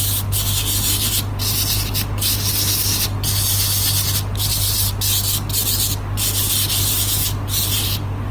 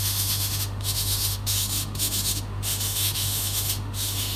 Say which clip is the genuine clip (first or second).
first